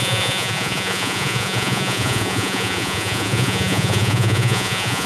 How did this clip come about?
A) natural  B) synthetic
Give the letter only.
B